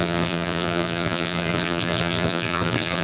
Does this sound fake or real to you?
fake